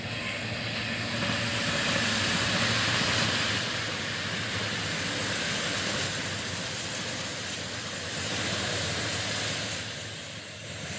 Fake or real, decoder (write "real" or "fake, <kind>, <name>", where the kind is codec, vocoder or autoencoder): real